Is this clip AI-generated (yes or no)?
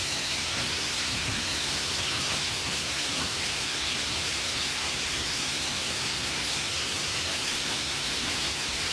yes